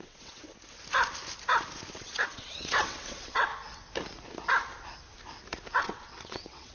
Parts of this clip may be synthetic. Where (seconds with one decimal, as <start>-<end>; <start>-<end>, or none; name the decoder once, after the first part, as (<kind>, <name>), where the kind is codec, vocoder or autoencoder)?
0.0-0.5 (vocoder, WaveNeXt); 2.0-3.5; 5.8-6.7